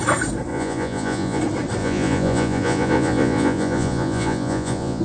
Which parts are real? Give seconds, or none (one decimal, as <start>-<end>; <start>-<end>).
0.0-0.5; 1.4-1.8